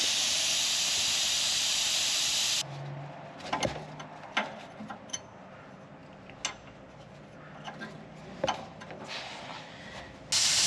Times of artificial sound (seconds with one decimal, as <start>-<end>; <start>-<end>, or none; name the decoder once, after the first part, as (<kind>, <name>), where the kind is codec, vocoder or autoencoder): none